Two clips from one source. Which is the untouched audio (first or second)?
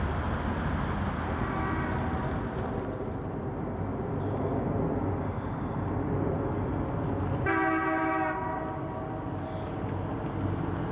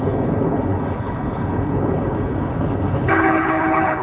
first